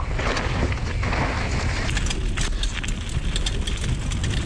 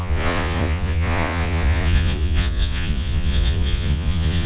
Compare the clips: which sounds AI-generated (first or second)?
second